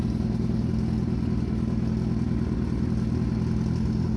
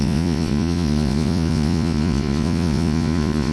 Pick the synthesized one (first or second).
second